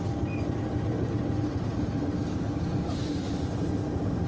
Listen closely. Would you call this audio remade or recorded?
recorded